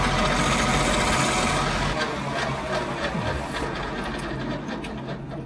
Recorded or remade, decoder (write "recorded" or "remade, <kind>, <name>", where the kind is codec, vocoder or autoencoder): recorded